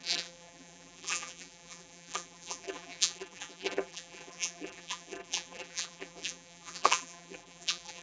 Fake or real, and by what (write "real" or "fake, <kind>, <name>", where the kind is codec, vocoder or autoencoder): fake, vocoder, BigVGAN v2